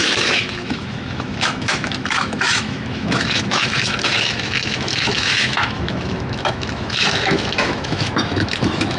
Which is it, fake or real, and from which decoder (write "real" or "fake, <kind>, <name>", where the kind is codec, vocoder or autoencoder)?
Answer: fake, autoencoder, DAC-VAE